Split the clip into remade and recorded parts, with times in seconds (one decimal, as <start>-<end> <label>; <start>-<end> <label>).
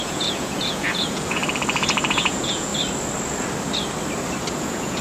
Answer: 0.0-1.4 remade; 1.4-2.1 recorded; 2.1-2.7 remade; 2.7-4.5 recorded; 4.5-5.0 remade